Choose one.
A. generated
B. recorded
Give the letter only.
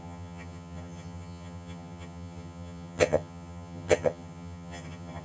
A